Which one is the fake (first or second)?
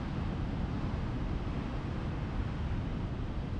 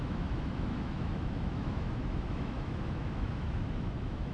second